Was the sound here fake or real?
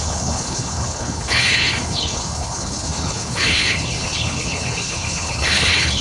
fake